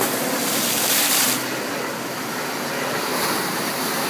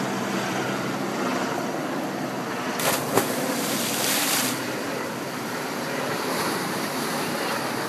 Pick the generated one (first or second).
second